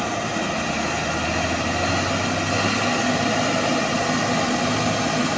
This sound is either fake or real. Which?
real